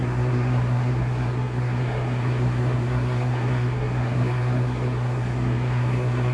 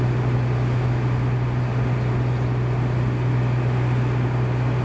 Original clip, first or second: second